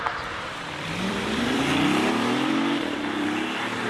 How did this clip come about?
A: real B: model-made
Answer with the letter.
B